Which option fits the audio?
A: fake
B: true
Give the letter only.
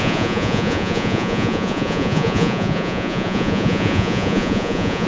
A